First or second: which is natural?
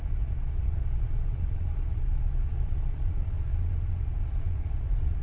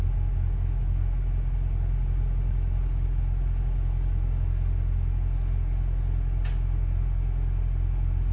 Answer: second